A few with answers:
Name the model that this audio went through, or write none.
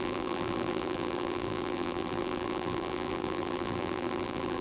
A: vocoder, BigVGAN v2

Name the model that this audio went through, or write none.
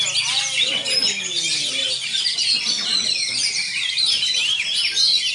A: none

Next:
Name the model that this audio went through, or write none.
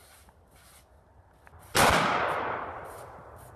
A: none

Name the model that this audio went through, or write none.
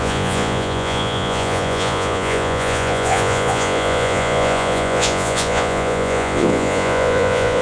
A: vocoder, Vocos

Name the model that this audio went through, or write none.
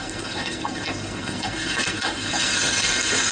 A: codec, SNAC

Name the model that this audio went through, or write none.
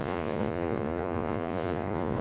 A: vocoder, Vocos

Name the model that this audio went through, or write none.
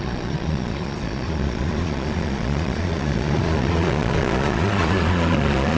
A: vocoder, Vocos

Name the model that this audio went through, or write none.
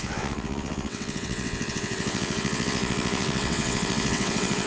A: vocoder, WaveNeXt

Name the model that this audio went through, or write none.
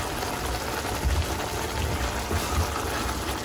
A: none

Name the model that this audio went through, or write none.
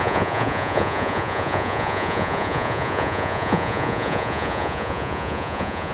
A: vocoder, Vocos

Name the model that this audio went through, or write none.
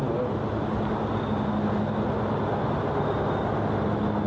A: none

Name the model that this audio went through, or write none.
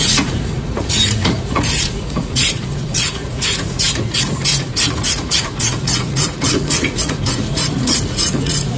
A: vocoder, Vocos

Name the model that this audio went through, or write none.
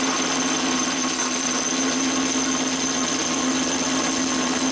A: none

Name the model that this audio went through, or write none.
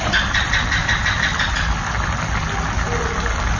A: none